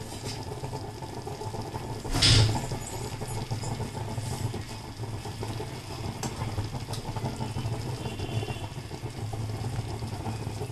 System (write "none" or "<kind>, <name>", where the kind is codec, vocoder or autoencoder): none